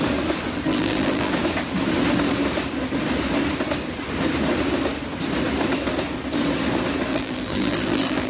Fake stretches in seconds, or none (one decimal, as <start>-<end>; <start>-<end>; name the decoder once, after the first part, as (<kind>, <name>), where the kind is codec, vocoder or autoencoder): 0.7-1.3 (vocoder, BigVGAN v2); 7.1-8.3